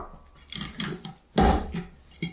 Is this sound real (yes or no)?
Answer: yes